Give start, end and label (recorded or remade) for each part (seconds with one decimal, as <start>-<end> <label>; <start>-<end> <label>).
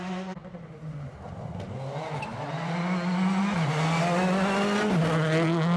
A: 0.0-5.8 recorded